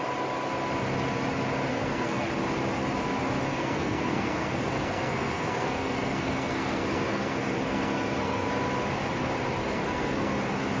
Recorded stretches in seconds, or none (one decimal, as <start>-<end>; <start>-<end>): 0.0-1.7; 2.3-3.5; 8.5-9.6; 10.3-10.8

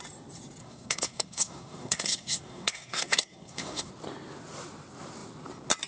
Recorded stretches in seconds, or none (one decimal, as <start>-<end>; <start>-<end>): 0.0-0.6; 3.9-5.9

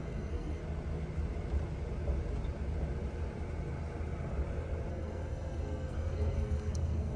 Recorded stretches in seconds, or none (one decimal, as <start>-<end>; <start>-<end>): 0.6-4.9

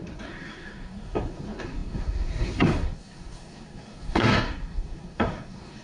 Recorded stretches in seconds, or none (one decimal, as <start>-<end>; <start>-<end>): none